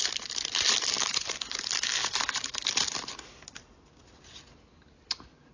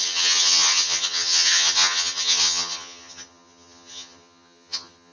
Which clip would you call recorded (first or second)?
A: first